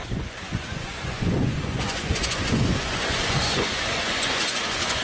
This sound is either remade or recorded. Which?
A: remade